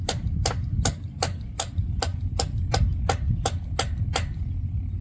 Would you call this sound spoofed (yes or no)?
no